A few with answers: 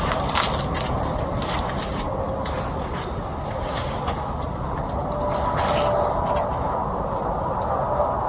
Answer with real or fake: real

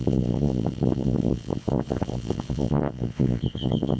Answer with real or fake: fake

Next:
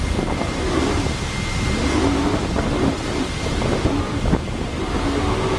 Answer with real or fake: real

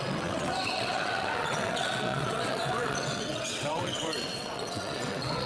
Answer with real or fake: fake